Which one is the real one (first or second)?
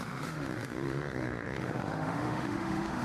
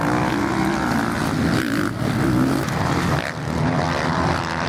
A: second